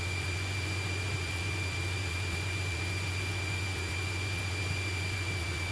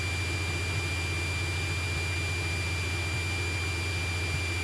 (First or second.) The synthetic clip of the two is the first